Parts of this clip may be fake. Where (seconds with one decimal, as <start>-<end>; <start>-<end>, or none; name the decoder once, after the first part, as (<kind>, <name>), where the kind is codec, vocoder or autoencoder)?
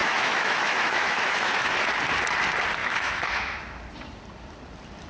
0.0-1.9 (autoencoder, DAC-VAE); 2.8-3.6